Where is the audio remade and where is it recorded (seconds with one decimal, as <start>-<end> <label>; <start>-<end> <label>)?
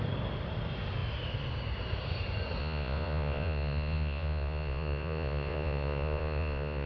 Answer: 0.0-2.6 recorded; 2.6-6.9 remade